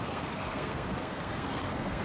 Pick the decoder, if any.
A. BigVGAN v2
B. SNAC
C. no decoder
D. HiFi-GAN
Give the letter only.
B